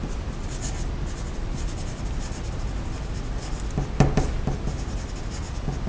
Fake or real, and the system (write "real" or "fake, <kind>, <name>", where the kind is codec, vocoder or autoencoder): real